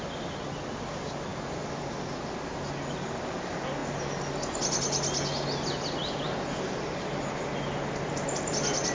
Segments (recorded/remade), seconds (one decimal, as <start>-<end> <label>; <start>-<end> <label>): 0.0-1.3 recorded; 1.3-2.0 remade; 2.0-8.9 recorded